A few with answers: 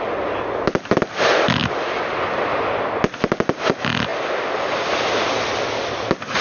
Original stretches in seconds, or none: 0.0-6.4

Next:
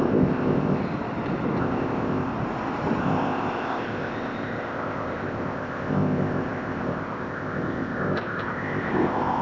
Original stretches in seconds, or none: 0.8-1.6; 2.3-3.0

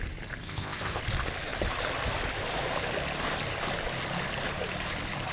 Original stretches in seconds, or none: 0.0-0.4; 1.0-5.3

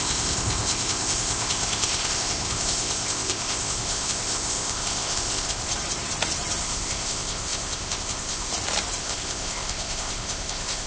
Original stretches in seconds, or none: 5.7-6.6; 8.5-9.0

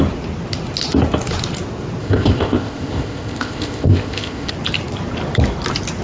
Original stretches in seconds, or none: 0.0-2.0; 4.5-6.0

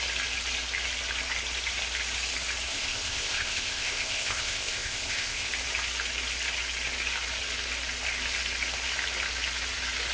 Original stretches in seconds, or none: 0.0-2.7; 5.5-10.1

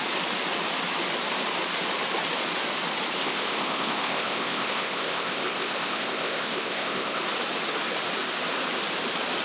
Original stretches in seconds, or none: 0.0-3.2; 7.2-9.4

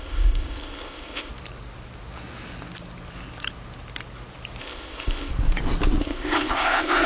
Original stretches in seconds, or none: 1.3-4.6; 5.3-6.0